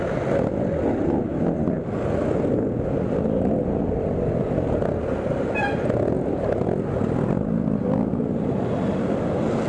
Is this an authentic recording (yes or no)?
yes